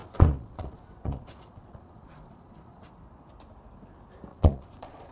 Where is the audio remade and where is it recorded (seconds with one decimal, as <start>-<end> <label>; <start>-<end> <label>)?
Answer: 0.0-2.9 remade; 2.9-4.3 recorded; 4.3-5.1 remade